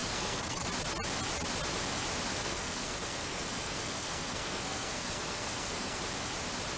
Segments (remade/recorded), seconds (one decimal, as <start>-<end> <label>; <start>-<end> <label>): 0.0-0.7 remade; 0.7-2.3 recorded; 2.3-6.0 remade; 6.0-6.8 recorded